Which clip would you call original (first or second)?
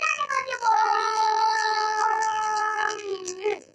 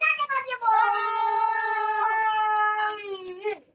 second